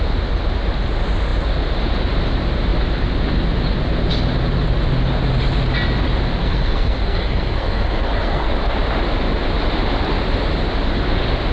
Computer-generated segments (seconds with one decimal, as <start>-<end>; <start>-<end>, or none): 6.4-8.5